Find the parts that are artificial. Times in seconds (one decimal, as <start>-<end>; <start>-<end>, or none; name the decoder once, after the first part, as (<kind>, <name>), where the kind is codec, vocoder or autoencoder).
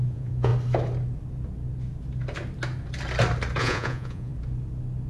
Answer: 0.0-0.5 (vocoder, Vocos); 3.6-4.3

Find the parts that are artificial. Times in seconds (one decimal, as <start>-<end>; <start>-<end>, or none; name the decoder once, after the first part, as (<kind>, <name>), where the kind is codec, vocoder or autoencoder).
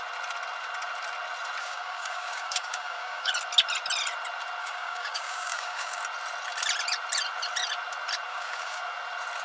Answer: 1.6-3.3 (codec, DAC); 4.6-6.0; 8.3-8.8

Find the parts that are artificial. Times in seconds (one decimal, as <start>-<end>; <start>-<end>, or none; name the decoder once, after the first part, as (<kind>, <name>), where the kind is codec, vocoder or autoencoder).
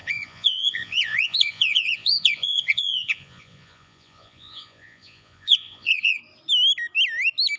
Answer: 0.0-6.2 (vocoder, Vocos)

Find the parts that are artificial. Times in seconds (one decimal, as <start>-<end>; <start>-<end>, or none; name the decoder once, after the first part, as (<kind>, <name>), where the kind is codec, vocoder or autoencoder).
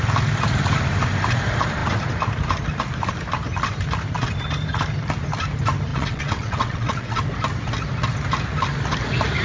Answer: 5.9-7.2 (vocoder, WaveNeXt)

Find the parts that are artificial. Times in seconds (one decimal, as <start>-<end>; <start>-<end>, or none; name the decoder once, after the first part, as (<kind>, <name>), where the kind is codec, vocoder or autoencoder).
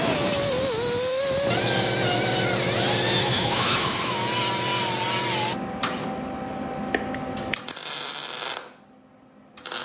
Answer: 3.2-4.1 (autoencoder, DAC-VAE)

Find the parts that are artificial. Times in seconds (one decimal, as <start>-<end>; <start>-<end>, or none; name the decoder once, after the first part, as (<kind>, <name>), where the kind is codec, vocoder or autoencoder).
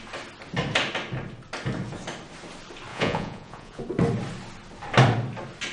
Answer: 2.9-3.8 (vocoder, Vocos)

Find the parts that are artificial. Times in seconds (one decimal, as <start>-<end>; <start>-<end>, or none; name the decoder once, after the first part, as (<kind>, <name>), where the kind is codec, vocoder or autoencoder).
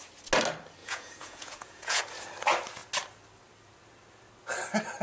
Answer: 0.8-2.0 (vocoder, Vocos)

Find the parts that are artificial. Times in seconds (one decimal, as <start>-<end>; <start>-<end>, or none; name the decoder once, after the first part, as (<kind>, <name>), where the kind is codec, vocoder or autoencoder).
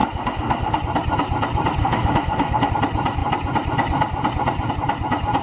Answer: 0.0-0.8 (autoencoder, DAC-VAE); 1.8-2.7